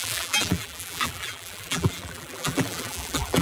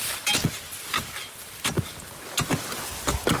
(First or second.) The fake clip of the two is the first